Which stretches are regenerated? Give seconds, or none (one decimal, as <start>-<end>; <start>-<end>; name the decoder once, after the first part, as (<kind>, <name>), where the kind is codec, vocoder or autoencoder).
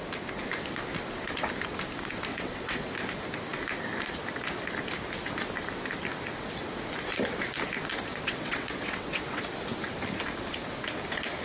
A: 2.3-2.9 (vocoder, WaveNeXt); 8.1-9.4